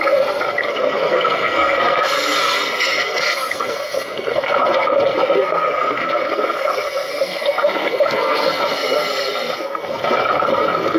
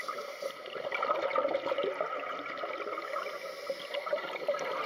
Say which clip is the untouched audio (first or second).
second